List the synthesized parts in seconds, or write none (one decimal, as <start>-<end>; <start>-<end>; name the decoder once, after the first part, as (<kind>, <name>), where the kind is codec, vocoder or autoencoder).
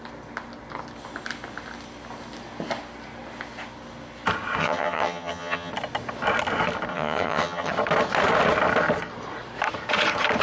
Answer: 4.6-5.7 (vocoder, HiFi-GAN); 6.9-7.7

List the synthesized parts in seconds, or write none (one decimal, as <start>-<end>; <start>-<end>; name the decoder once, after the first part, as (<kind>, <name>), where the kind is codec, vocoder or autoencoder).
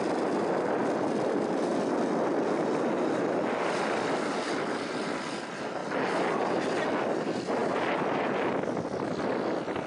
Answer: none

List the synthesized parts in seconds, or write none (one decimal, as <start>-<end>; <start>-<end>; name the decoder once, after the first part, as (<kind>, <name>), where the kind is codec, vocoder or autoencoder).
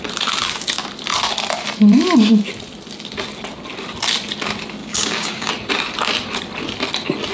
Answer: 4.8-5.5 (codec, DAC)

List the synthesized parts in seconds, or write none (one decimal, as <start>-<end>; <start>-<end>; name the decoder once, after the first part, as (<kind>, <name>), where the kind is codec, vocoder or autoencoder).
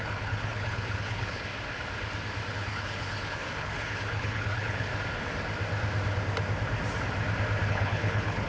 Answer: 0.0-1.5 (codec, HILCodec); 2.5-4.9; 7.7-8.5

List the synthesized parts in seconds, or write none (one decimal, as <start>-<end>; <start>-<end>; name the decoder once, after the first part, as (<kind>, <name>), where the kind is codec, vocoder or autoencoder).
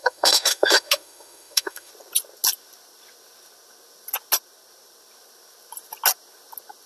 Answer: 0.0-1.9 (autoencoder, DAC-VAE)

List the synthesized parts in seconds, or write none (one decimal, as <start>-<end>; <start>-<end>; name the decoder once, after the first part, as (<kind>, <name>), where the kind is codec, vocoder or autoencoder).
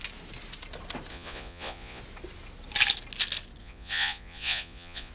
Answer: 1.1-2.0 (vocoder, Vocos); 3.6-5.1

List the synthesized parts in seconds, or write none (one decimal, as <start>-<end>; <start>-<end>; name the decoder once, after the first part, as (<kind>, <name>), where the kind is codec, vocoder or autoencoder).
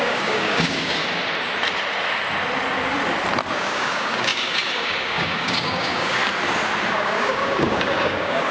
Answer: 0.0-1.0 (codec, DAC); 3.5-6.2; 6.9-8.5